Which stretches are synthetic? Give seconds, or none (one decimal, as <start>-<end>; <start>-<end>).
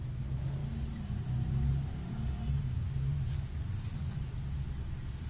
3.1-4.3